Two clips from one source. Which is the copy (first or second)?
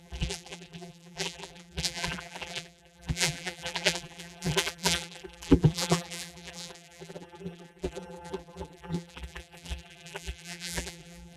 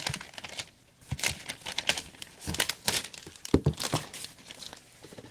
first